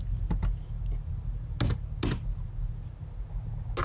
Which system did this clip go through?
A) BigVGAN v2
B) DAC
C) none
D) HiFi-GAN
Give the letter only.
C